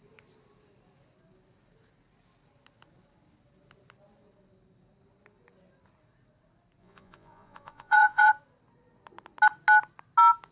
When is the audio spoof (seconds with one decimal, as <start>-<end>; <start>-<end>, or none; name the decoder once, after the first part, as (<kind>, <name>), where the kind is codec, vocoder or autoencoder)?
6.8-8.3 (vocoder, Vocos)